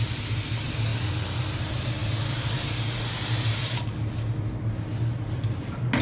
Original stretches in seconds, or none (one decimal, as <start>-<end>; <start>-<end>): 0.0-6.0